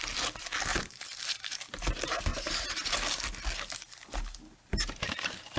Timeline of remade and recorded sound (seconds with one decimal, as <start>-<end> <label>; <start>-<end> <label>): 0.0-0.7 recorded; 0.7-1.6 remade; 1.6-2.3 recorded; 2.3-2.9 remade; 2.9-4.7 recorded; 4.7-5.6 remade